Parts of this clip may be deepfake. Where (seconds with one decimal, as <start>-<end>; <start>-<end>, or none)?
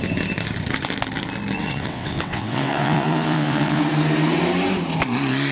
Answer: 1.6-3.8